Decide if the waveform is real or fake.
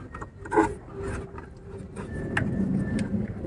real